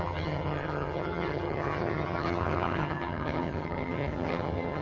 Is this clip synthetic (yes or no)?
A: yes